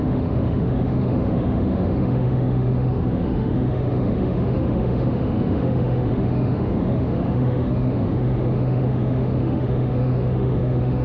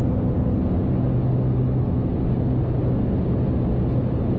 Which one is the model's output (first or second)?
first